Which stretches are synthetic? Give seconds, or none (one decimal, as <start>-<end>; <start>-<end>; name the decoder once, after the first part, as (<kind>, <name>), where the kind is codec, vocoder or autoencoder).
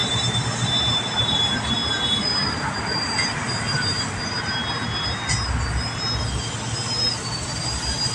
0.0-0.8 (vocoder, BigVGAN v2)